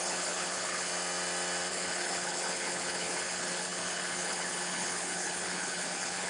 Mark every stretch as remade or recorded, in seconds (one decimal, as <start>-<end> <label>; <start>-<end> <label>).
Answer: 0.0-0.9 remade; 0.9-1.7 recorded; 1.7-6.3 remade